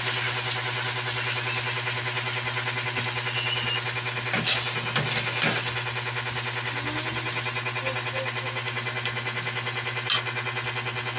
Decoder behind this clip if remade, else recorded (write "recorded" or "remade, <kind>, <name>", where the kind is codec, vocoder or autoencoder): recorded